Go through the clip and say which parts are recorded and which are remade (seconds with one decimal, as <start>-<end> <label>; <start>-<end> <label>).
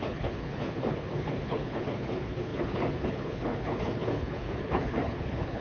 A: 0.0-5.6 remade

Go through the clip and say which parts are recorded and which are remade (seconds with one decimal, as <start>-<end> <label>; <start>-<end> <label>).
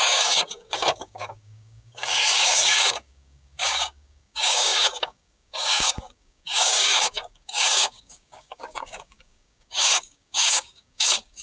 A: 0.0-11.4 remade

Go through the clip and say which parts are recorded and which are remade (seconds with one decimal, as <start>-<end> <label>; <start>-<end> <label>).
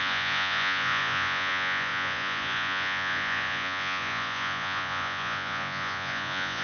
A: 0.0-6.6 remade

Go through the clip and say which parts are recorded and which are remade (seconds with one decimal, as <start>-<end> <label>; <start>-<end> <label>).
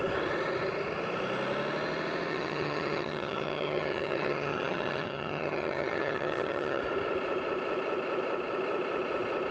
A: 0.0-2.3 recorded; 2.3-6.8 remade; 6.8-9.5 recorded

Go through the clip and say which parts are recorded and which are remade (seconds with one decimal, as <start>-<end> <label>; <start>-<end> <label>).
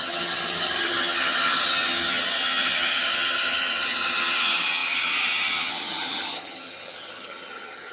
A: 0.0-7.9 remade